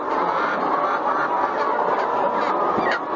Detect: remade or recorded recorded